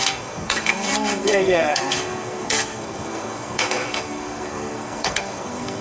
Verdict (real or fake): fake